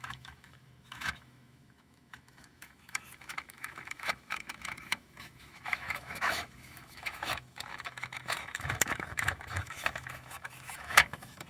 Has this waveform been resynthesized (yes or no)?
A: yes